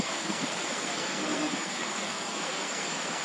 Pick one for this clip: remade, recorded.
remade